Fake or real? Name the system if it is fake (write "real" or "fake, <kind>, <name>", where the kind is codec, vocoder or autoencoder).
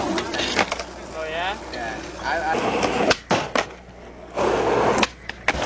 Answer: real